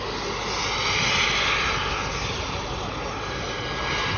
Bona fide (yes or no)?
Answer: yes